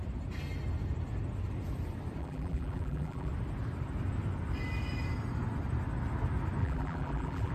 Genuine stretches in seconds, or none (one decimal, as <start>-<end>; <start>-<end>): 0.0-2.2; 3.3-6.6